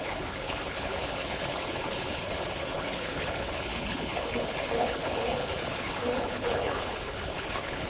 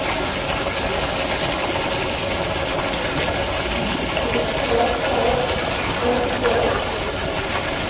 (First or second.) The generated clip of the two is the first